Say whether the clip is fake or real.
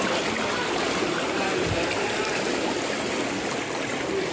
real